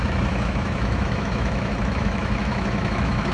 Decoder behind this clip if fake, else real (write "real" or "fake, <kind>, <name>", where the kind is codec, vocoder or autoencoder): fake, autoencoder, DAC-VAE